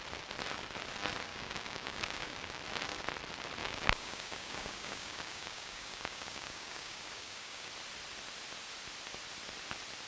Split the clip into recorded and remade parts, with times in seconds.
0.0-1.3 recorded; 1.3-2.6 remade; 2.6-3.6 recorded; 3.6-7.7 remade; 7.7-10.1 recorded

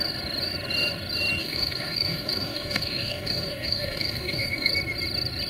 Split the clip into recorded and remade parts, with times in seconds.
0.0-1.4 recorded; 1.4-4.7 remade; 4.7-5.5 recorded

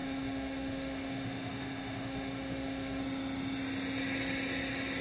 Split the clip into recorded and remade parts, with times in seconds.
0.0-3.0 remade; 3.0-5.0 recorded

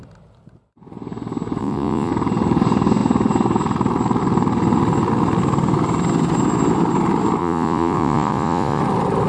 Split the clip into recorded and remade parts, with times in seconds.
0.0-1.6 recorded; 1.6-2.1 remade; 2.1-7.4 recorded; 7.4-8.8 remade; 8.8-9.3 recorded

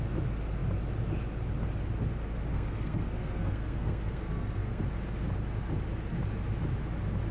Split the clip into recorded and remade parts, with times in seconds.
0.0-2.5 recorded; 2.5-4.8 remade; 4.8-7.3 recorded

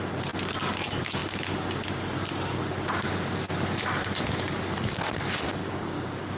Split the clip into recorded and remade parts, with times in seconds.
0.0-5.6 recorded; 5.6-6.4 remade

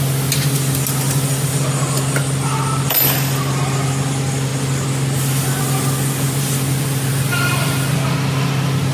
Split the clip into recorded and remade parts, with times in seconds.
0.0-8.9 recorded

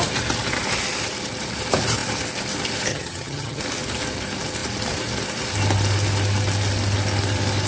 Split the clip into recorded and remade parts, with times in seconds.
0.0-2.9 recorded; 2.9-3.6 remade; 3.6-7.7 recorded